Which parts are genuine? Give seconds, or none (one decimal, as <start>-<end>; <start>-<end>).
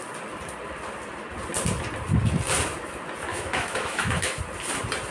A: 0.0-3.3; 4.4-5.1